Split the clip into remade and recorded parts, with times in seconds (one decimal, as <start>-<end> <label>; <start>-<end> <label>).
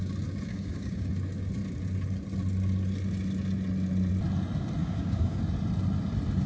0.0-0.5 recorded; 0.5-1.1 remade; 1.1-4.8 recorded; 4.8-5.4 remade; 5.4-6.5 recorded